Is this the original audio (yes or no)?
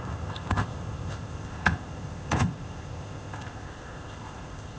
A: no